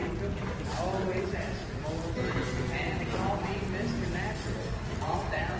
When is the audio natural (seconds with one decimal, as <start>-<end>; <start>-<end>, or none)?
0.0-1.2; 1.6-5.0